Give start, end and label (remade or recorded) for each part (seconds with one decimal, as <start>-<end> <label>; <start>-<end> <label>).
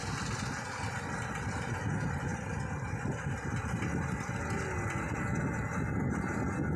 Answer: 0.0-6.8 recorded